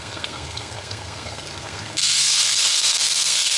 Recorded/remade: remade